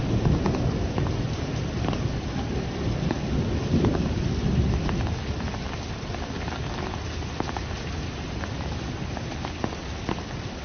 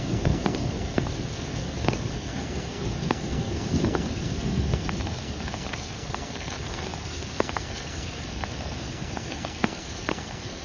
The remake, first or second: second